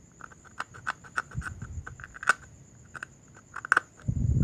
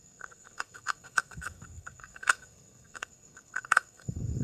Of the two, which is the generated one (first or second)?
second